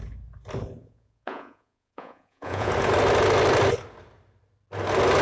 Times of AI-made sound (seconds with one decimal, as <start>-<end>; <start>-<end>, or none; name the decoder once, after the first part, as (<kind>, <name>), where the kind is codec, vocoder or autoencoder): 0.8-2.7 (vocoder, Vocos)